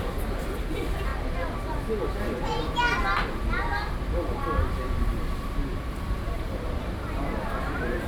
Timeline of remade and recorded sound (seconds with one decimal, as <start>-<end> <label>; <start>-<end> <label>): 0.0-1.1 remade; 1.1-4.0 recorded; 4.0-8.1 remade